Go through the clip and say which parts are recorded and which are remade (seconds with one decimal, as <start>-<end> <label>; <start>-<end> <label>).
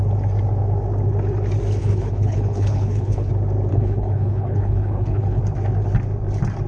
0.0-1.8 recorded; 1.8-3.3 remade; 3.3-3.7 recorded; 3.7-5.4 remade; 5.4-6.7 recorded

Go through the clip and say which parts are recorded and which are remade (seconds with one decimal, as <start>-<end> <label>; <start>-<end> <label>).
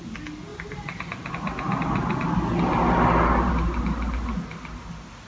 0.0-5.3 recorded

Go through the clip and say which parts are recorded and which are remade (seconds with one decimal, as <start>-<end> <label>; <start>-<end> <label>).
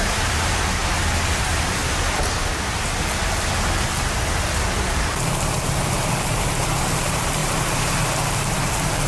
0.0-0.8 remade; 0.8-1.4 recorded; 1.4-1.8 remade; 1.8-5.0 recorded; 5.0-9.1 remade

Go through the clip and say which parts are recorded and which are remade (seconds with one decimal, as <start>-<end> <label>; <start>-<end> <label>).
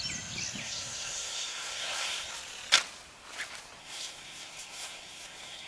0.0-0.6 recorded; 0.6-2.3 remade; 2.3-3.8 recorded; 3.8-5.7 remade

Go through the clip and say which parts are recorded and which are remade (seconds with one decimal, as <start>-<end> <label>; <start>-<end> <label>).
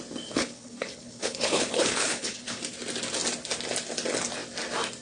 0.0-0.4 recorded; 0.4-2.6 remade; 2.6-5.0 recorded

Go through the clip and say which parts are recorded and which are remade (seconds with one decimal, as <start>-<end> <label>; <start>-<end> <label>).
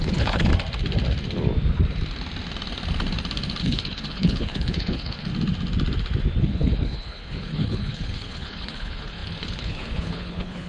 0.0-0.5 remade; 0.5-3.6 recorded; 3.6-5.3 remade; 5.3-6.4 recorded; 6.4-10.7 remade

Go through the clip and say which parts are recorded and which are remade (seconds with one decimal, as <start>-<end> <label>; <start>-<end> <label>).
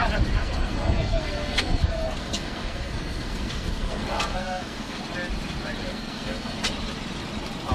0.0-0.4 recorded; 0.4-5.0 remade; 5.0-5.9 recorded; 5.9-6.6 remade; 6.6-7.7 recorded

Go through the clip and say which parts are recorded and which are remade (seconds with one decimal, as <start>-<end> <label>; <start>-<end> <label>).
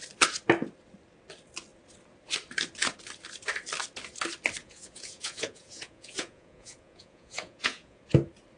0.0-4.6 recorded; 4.6-8.0 remade; 8.0-8.6 recorded